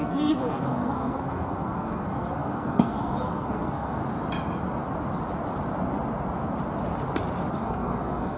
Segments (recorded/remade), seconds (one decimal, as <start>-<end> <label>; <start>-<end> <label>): 0.0-4.0 remade; 4.0-7.5 recorded; 7.5-8.4 remade